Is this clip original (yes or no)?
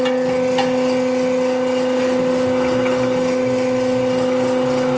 yes